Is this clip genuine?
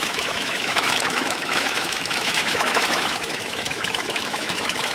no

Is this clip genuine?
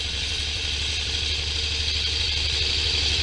no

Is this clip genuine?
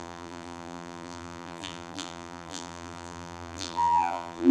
no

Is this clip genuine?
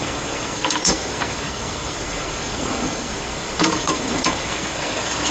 no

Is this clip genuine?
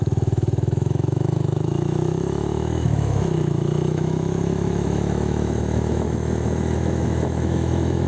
no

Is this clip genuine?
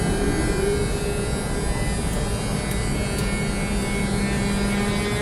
yes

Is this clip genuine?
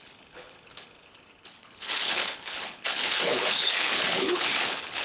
no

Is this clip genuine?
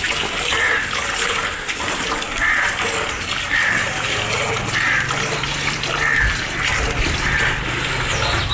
yes